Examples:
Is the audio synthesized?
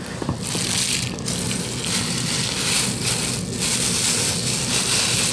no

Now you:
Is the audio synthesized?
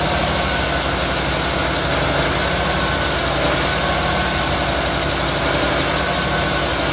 no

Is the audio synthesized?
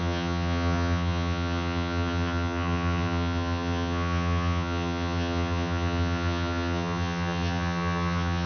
yes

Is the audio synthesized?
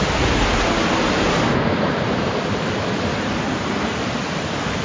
no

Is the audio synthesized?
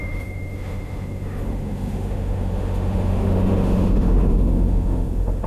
yes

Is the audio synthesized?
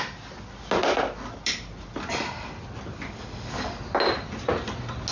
no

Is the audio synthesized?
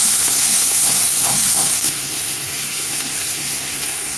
yes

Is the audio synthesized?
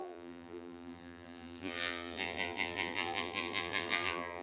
yes